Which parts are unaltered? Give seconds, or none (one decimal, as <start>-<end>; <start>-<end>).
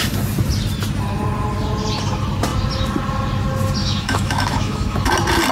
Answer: 0.0-3.8; 5.1-5.5